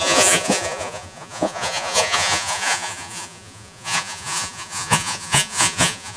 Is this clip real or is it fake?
fake